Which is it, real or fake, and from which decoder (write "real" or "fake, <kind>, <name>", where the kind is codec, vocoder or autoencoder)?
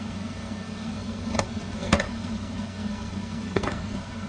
fake, codec, SNAC